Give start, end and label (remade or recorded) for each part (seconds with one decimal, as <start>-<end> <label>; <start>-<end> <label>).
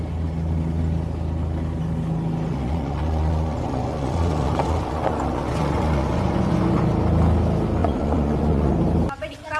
0.0-2.5 recorded; 2.5-6.9 remade; 6.9-7.8 recorded; 7.8-8.7 remade; 8.7-9.6 recorded